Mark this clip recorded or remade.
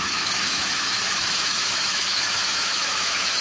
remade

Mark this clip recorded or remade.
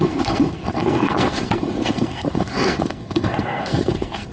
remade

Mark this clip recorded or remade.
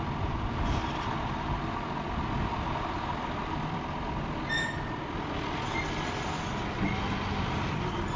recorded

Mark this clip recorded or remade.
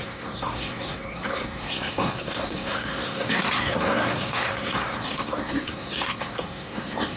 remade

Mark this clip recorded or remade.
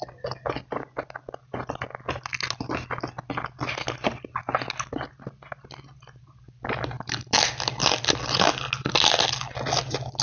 recorded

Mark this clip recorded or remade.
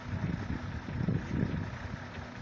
recorded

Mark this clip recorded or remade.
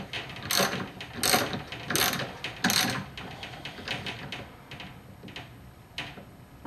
recorded